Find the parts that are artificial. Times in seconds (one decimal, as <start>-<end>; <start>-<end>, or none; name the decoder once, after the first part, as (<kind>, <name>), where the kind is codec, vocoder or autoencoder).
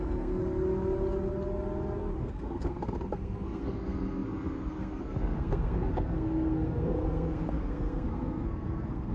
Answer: 0.0-0.4 (codec, SNAC); 2.2-9.1